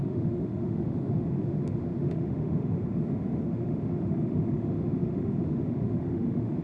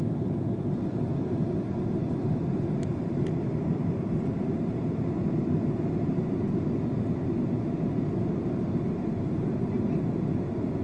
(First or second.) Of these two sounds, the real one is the second